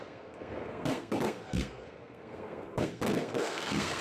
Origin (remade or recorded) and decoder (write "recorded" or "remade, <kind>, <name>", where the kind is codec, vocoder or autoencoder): remade, codec, SNAC